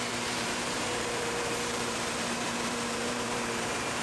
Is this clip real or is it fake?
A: fake